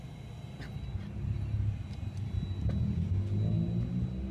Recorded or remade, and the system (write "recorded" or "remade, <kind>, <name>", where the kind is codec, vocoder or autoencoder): recorded